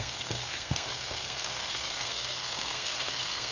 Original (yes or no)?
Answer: no